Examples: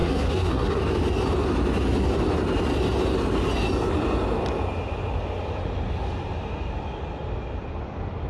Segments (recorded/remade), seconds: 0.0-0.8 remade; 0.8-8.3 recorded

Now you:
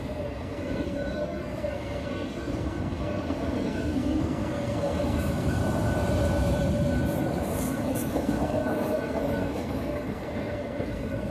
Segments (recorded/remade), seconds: 0.0-5.6 remade; 5.6-7.2 recorded; 7.2-11.3 remade

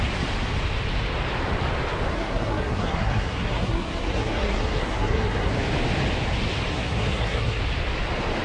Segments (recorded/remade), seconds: 0.0-2.1 recorded; 2.1-5.5 remade; 5.5-6.7 recorded; 6.7-7.6 remade; 7.6-8.4 recorded

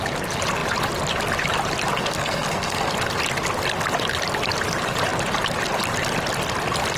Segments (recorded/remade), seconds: 0.0-2.0 recorded; 2.0-2.9 remade; 2.9-7.0 recorded

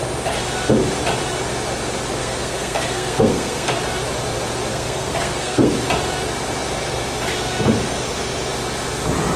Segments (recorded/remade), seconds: 0.0-2.2 recorded; 2.2-3.7 remade; 3.7-4.7 recorded; 4.7-5.7 remade; 5.7-9.4 recorded